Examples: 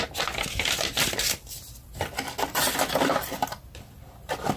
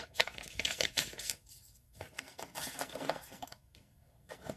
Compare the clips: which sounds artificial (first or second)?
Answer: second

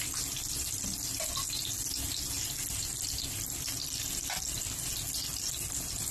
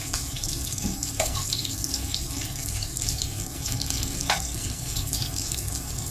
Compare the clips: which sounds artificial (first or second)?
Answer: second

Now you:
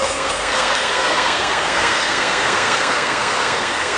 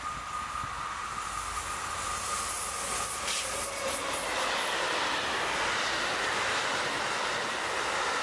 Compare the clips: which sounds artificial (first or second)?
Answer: first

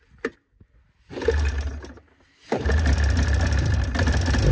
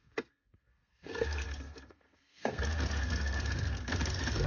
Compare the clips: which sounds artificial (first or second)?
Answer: second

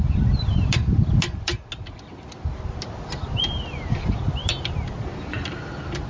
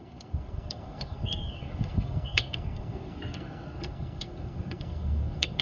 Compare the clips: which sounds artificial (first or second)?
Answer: second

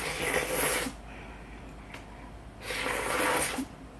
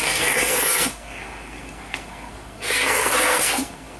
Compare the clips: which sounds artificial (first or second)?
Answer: second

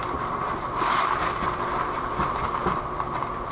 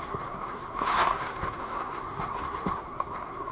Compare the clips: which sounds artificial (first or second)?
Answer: second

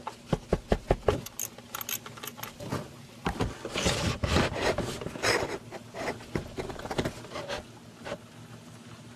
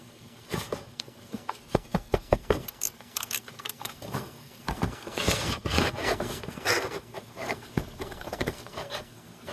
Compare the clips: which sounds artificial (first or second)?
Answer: second